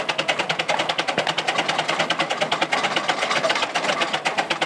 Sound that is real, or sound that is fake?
real